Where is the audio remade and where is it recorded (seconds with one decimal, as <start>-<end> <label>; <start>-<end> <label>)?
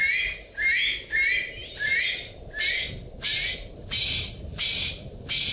0.0-5.5 recorded